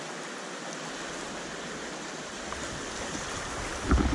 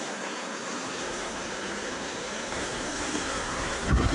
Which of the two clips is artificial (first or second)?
second